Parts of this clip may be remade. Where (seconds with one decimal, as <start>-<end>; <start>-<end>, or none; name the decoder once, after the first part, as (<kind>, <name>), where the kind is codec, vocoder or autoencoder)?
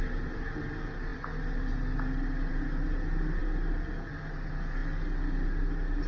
none